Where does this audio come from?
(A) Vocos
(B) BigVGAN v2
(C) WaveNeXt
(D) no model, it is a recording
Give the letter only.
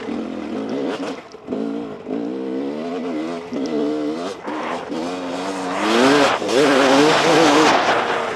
D